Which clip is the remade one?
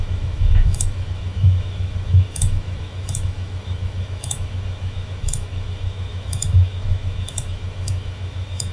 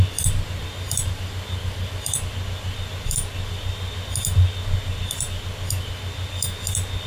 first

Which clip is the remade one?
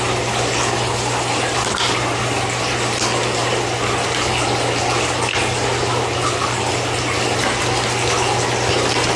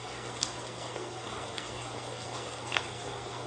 second